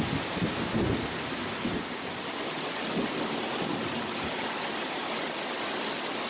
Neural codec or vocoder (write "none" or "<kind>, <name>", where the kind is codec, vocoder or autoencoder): none